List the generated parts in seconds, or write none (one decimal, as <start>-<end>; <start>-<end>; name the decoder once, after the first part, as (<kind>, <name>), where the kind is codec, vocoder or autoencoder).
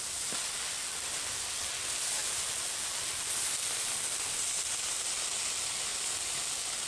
none